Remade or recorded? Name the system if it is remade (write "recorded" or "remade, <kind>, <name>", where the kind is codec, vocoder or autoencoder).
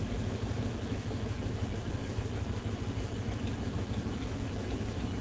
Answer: remade, autoencoder, DAC-VAE